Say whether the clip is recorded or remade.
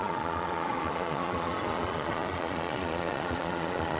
remade